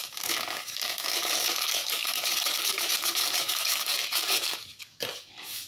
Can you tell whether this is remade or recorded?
remade